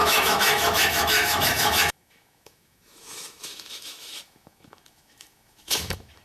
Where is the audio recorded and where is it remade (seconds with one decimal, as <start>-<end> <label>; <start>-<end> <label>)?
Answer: 0.0-6.2 remade